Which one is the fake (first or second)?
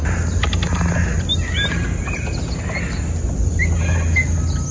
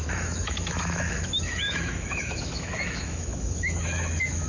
second